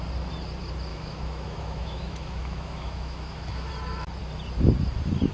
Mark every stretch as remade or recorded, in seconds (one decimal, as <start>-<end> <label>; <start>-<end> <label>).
0.0-0.9 recorded; 0.9-3.7 remade; 3.7-5.3 recorded